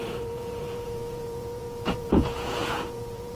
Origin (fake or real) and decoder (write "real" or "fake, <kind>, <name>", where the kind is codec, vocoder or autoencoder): fake, vocoder, Vocos